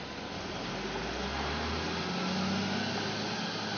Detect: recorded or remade recorded